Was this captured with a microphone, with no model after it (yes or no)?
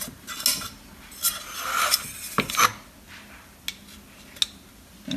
yes